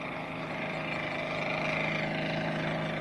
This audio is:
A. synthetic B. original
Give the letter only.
B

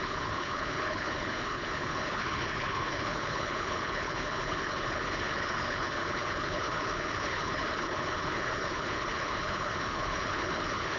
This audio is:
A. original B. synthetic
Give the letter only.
B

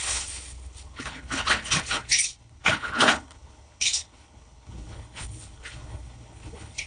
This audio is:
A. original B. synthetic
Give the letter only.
B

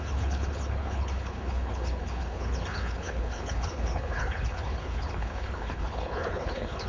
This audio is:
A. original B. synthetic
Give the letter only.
B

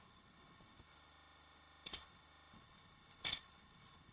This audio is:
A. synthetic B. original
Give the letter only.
A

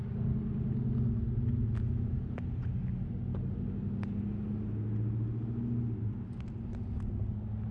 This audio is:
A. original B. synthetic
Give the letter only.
A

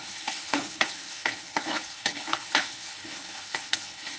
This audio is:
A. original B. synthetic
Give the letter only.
B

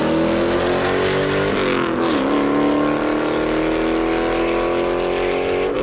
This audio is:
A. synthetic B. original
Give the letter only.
B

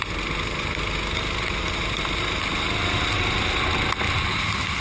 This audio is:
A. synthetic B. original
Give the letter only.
B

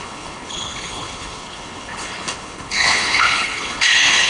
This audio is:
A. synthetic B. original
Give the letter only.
A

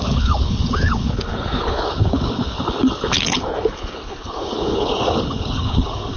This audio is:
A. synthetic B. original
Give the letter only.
A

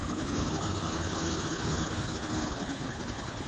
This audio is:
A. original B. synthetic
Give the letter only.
B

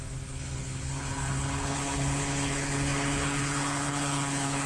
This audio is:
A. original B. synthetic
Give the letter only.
B